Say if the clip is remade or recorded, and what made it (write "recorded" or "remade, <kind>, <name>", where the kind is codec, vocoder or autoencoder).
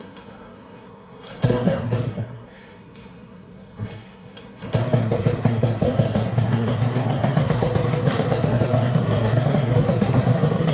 remade, codec, SNAC